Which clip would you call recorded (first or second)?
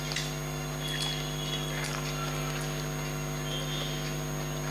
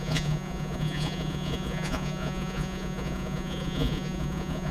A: first